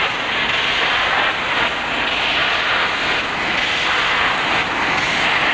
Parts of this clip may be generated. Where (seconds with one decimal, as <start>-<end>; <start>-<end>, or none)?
none